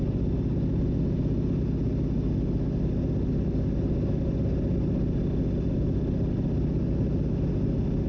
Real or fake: real